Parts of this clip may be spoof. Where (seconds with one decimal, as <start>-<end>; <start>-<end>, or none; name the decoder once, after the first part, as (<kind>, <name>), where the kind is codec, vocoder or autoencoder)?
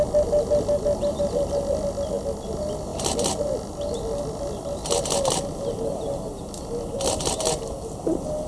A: none